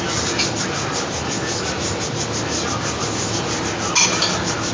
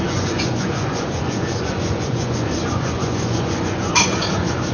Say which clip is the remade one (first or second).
second